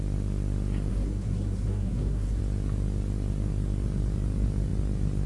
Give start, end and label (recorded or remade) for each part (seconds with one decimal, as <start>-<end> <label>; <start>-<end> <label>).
0.0-0.9 recorded; 0.9-2.4 remade; 2.4-5.3 recorded